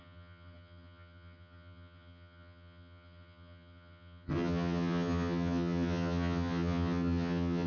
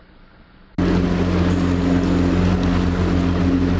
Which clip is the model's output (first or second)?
first